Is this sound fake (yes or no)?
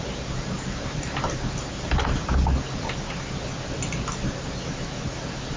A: no